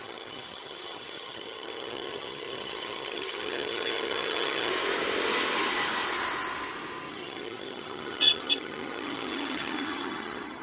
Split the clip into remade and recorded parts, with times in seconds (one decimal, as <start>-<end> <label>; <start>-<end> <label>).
0.0-4.7 remade; 4.7-7.1 recorded; 7.1-10.6 remade